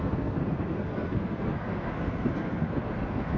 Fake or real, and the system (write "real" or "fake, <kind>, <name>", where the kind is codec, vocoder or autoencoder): fake, codec, SNAC